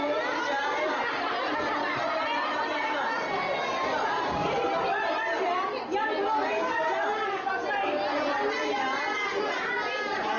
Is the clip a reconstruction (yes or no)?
no